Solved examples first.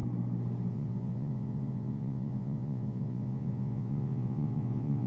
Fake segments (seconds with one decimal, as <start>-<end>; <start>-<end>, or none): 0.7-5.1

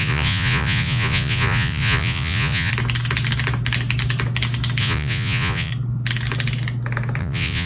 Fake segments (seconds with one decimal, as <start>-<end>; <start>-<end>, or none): 0.0-2.7; 4.8-5.7; 7.2-7.7

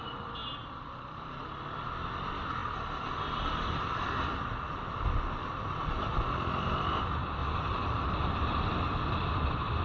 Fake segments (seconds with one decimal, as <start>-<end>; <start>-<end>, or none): none